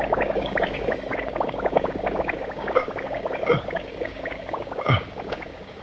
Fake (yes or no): yes